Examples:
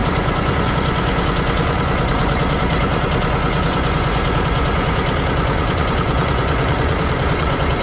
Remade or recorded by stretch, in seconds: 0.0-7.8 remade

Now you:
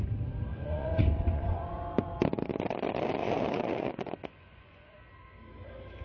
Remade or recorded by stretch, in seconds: 0.0-0.5 recorded; 0.5-2.2 remade; 2.2-3.2 recorded; 3.2-5.0 remade; 5.0-6.0 recorded

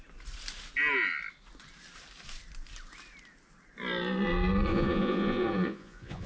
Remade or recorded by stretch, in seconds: 0.0-4.7 recorded; 4.7-6.3 remade

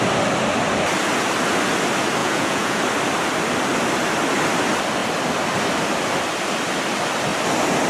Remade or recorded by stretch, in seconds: 0.0-2.2 recorded; 2.2-2.8 remade; 2.8-7.9 recorded